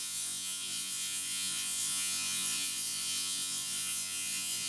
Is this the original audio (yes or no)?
no